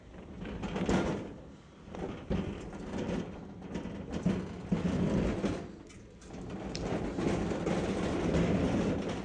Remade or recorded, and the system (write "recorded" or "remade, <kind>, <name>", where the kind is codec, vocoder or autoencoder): recorded